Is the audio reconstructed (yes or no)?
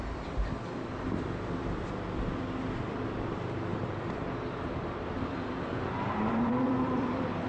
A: yes